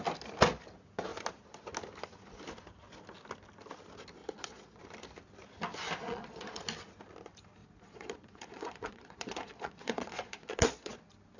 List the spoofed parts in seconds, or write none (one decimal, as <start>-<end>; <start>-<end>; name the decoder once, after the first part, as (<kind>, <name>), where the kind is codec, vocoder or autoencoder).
4.2-4.8 (vocoder, Vocos); 6.0-6.6; 7.6-10.9